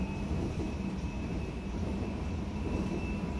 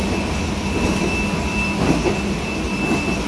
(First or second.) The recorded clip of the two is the second